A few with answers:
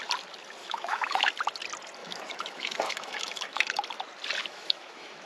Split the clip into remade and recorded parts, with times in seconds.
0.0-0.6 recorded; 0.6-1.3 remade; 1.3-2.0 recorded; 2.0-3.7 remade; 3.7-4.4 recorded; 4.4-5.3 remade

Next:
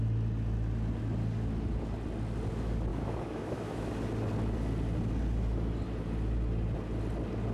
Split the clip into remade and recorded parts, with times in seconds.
0.0-2.9 recorded; 2.9-3.9 remade; 3.9-7.5 recorded

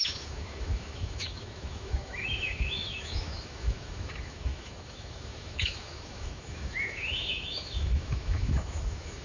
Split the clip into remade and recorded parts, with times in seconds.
0.0-9.2 remade

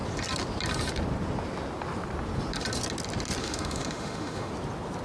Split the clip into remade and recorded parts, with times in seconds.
0.0-3.4 recorded; 3.4-4.5 remade; 4.5-5.0 recorded

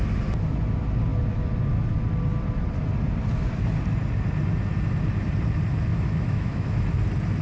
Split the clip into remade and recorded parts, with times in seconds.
0.0-5.9 recorded; 5.9-6.8 remade; 6.8-7.4 recorded

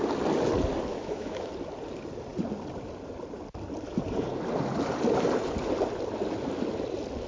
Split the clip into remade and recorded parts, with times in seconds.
0.0-0.9 recorded; 0.9-1.5 remade; 1.5-7.3 recorded

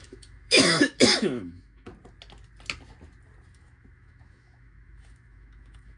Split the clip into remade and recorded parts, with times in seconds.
0.0-1.9 remade; 1.9-3.5 recorded; 3.5-6.0 remade